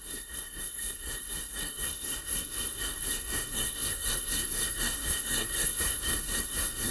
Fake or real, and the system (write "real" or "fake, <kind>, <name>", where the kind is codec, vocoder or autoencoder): fake, codec, SNAC